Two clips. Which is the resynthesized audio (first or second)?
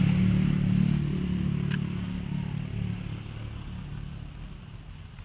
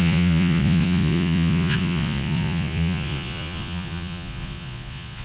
second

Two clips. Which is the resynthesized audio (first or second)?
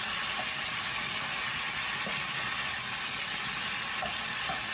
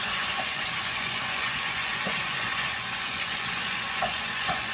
second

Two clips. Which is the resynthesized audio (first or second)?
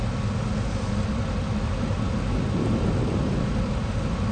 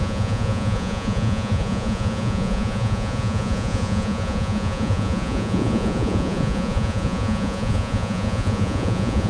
second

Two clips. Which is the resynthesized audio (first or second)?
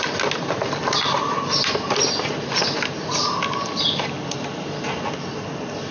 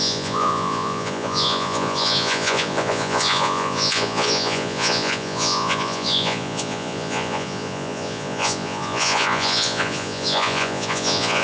second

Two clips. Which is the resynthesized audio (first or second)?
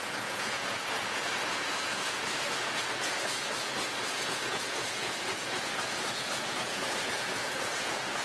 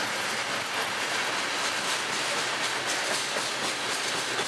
first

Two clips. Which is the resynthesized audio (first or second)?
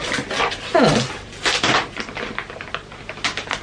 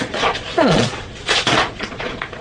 second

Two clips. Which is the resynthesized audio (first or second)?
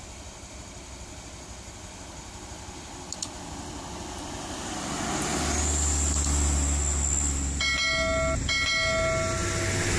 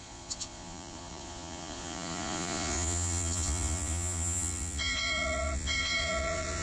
second